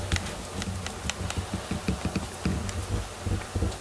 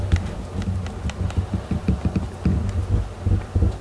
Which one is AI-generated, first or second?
second